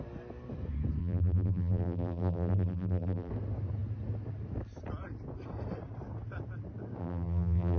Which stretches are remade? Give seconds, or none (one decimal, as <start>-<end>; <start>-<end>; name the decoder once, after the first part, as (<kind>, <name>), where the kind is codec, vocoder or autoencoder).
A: 1.0-3.3 (vocoder, BigVGAN v2); 7.0-7.8